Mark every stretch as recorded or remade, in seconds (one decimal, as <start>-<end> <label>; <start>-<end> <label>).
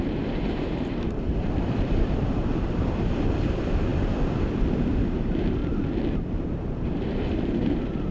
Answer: 0.0-3.9 remade; 3.9-4.9 recorded; 4.9-5.6 remade; 5.6-6.1 recorded; 6.1-8.1 remade